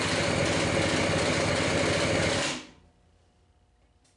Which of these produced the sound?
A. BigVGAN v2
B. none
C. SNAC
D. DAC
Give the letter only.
B